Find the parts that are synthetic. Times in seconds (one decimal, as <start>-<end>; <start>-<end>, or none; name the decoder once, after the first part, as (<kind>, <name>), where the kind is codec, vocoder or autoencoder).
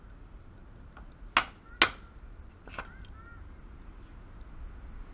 none